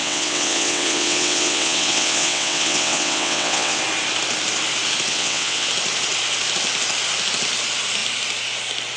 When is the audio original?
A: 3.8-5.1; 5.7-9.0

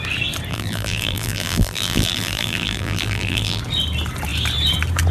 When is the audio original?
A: 0.0-0.5; 3.6-5.1

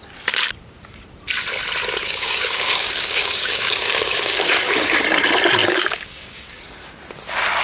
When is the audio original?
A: 0.0-2.0; 5.0-5.6; 6.6-7.6

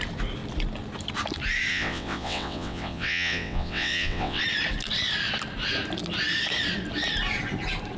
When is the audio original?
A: 0.0-1.7; 4.4-8.0

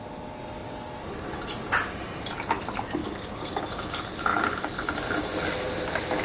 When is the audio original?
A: 0.0-6.2